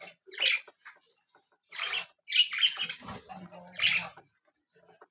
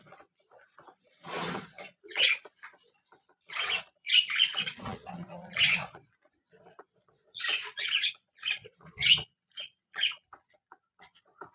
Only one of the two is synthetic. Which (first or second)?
second